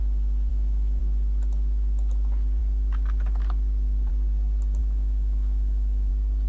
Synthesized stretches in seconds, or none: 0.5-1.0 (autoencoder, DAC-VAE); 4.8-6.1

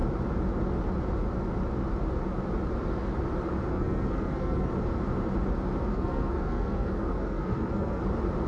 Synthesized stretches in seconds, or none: 3.7-4.7 (codec, SNAC); 5.9-8.0

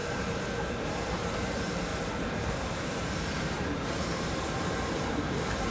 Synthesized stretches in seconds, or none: 0.7-1.9 (vocoder, BigVGAN v2); 2.5-5.7

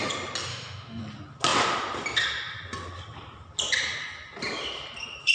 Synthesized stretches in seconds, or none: 0.5-1.0 (autoencoder, DAC-VAE)

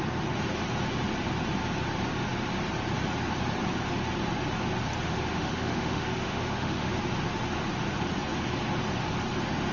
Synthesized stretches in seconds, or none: 5.3-7.0 (autoencoder, DAC-VAE)

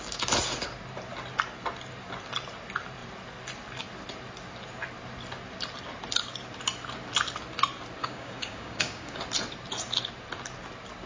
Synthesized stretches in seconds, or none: 8.0-9.2 (codec, DAC)